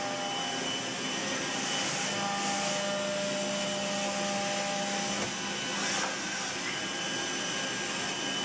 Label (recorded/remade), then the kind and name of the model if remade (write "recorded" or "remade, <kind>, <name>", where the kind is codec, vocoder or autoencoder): recorded